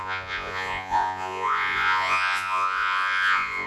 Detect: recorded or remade remade